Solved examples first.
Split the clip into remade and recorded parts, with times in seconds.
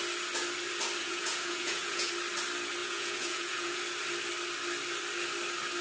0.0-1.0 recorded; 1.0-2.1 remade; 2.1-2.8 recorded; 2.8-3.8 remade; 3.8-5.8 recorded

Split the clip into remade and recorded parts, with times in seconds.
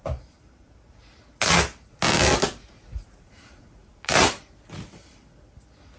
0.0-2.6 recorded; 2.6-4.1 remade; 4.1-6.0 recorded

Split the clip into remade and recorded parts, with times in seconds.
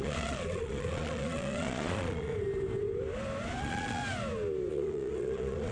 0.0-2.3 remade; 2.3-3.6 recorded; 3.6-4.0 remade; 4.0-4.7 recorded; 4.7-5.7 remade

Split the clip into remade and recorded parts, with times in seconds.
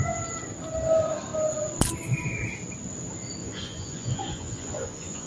0.0-3.4 recorded; 3.4-5.3 remade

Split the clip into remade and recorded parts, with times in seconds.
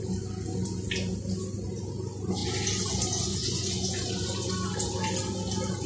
0.0-3.3 recorded; 3.3-4.5 remade; 4.5-5.9 recorded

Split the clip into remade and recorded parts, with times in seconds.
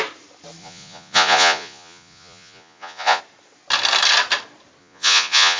0.0-0.6 recorded; 0.6-3.2 remade; 3.2-4.8 recorded; 4.8-5.6 remade